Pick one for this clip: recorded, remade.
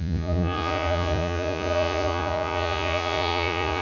remade